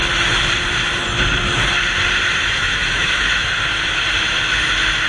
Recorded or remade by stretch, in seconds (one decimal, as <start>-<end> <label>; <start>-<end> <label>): 0.0-2.4 recorded; 2.4-3.6 remade; 3.6-5.1 recorded

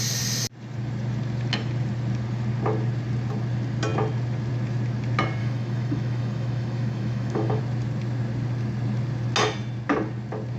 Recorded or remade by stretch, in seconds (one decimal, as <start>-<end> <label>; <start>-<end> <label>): 0.0-5.4 recorded; 5.4-7.6 remade; 7.6-10.6 recorded

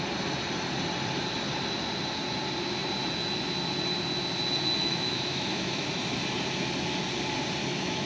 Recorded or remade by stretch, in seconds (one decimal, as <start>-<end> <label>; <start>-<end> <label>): 0.0-4.8 recorded; 4.8-5.9 remade; 5.9-7.6 recorded; 7.6-8.1 remade

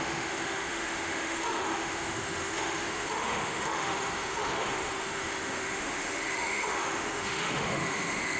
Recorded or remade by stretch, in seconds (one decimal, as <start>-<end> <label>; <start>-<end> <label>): 0.0-8.4 remade

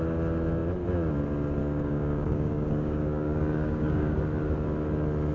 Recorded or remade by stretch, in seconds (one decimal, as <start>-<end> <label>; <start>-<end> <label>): 0.0-1.6 recorded; 1.6-4.2 remade; 4.2-5.3 recorded

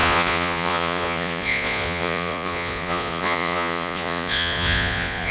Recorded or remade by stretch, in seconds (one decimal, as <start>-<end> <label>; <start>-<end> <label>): 0.0-5.3 remade

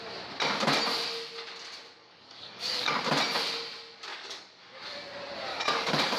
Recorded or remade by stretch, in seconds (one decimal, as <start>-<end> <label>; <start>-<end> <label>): 0.0-2.0 recorded; 2.0-3.0 remade; 3.0-4.1 recorded; 4.1-4.8 remade; 4.8-5.5 recorded; 5.5-6.2 remade